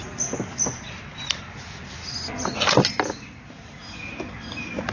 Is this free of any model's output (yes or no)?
yes